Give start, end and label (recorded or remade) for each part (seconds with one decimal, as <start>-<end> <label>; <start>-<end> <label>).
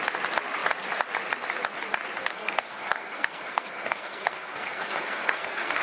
0.0-2.2 recorded; 2.2-5.8 remade